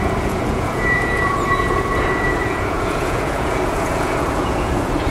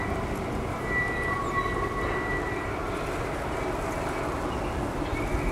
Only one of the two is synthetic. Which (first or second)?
first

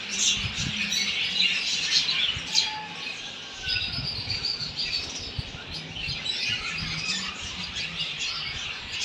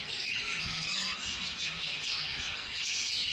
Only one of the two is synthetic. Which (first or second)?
second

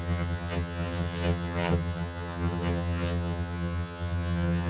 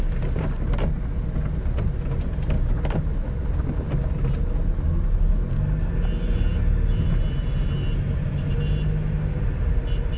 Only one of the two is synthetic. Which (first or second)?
first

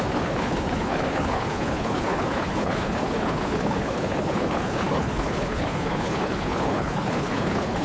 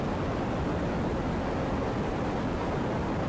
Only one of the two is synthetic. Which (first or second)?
first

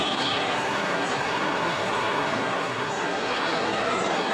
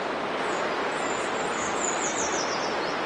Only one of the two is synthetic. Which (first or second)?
first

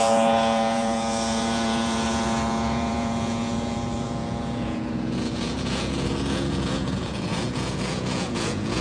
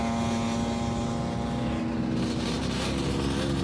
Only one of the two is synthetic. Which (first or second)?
first